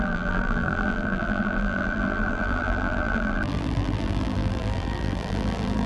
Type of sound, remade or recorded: remade